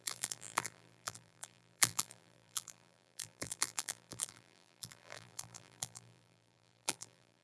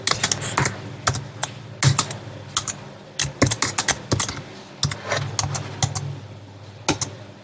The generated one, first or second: first